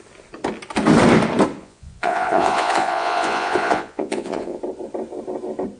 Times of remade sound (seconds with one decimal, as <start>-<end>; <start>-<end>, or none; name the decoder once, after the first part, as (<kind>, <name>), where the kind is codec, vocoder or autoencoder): 1.6-4.6 (vocoder, Vocos)

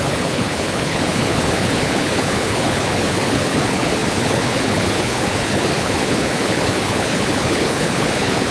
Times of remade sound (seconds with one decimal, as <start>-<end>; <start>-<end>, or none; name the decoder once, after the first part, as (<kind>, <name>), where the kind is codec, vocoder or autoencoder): 0.0-8.5 (codec, HILCodec)

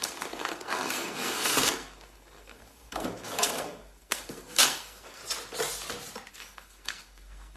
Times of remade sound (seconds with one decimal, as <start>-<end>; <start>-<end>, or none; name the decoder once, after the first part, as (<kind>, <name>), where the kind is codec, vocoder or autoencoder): 0.0-5.2 (codec, SNAC); 6.3-7.6

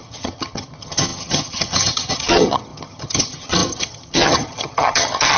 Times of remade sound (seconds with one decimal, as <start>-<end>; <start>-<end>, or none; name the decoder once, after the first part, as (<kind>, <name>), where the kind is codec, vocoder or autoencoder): 0.0-5.4 (vocoder, HiFi-GAN)

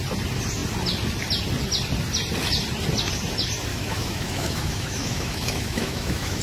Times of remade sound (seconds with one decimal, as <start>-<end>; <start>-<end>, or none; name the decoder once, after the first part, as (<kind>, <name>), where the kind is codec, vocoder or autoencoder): 3.7-6.4 (autoencoder, DAC-VAE)